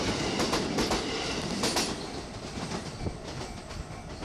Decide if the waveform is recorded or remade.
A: recorded